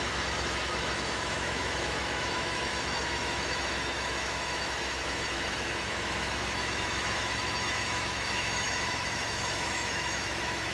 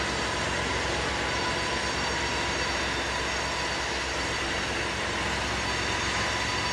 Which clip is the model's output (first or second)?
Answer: first